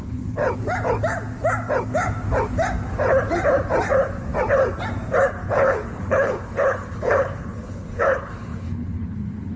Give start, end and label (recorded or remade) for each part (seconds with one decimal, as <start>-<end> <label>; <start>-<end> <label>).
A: 0.0-0.4 remade; 0.4-5.3 recorded; 5.3-9.6 remade